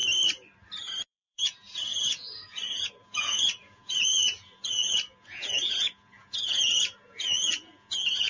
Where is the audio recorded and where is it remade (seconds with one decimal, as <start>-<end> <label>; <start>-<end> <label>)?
0.0-1.0 recorded; 1.0-8.3 remade